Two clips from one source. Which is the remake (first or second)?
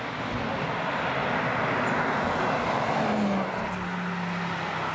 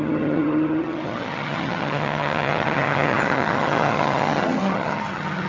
second